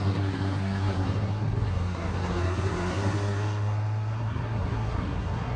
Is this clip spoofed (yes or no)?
yes